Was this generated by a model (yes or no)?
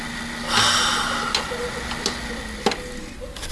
no